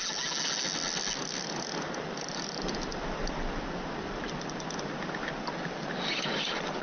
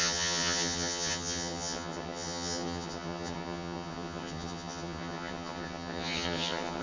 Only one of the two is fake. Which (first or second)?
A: second